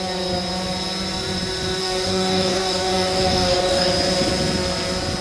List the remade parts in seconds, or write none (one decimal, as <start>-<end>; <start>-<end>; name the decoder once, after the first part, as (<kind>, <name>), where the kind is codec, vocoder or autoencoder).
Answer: 1.8-3.9 (codec, DAC)